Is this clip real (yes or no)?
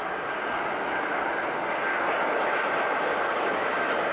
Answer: yes